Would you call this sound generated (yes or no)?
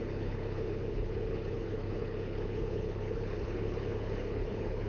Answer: yes